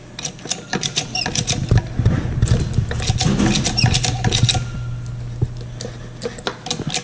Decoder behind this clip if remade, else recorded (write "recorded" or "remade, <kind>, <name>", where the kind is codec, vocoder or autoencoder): recorded